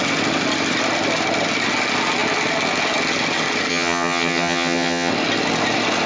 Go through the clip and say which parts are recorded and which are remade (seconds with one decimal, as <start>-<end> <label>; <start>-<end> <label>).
0.0-3.7 recorded; 3.7-5.1 remade; 5.1-6.1 recorded

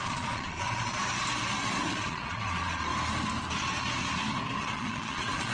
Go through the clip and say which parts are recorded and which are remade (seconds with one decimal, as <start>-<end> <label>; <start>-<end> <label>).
0.0-1.0 remade; 1.0-1.9 recorded; 1.9-2.9 remade; 2.9-4.6 recorded; 4.6-5.5 remade